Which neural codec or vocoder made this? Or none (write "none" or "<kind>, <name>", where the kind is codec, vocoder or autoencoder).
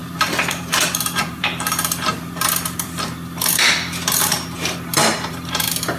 vocoder, BigVGAN v2